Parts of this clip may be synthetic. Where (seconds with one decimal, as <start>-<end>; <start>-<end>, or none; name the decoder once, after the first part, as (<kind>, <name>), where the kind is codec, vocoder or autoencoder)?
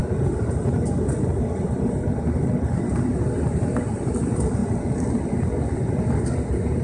none